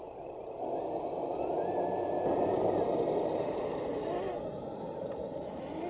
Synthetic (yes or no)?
no